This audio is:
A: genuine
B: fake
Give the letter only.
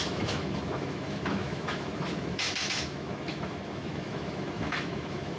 B